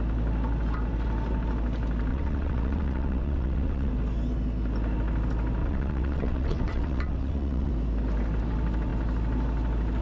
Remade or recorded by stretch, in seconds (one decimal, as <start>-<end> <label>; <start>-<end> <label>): 0.0-2.1 recorded; 2.1-3.9 remade; 3.9-5.6 recorded; 5.6-7.7 remade; 7.7-10.0 recorded

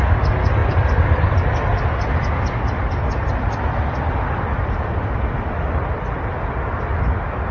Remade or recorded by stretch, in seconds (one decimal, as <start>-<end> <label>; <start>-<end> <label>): 0.0-7.5 recorded

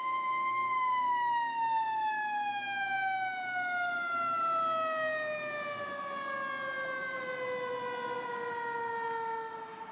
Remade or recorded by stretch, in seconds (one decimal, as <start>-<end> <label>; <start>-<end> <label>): 0.0-9.9 recorded

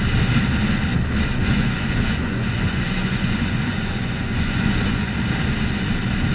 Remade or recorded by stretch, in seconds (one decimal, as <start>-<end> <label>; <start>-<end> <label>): 0.0-1.3 recorded; 1.3-5.1 remade; 5.1-6.3 recorded